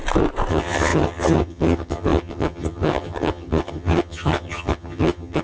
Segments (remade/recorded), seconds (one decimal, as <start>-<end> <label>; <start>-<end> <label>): 0.0-0.5 recorded; 0.5-5.4 remade